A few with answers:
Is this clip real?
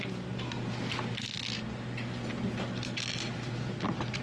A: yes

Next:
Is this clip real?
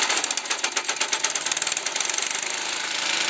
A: yes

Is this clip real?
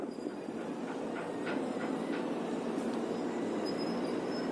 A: no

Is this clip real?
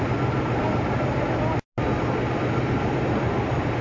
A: yes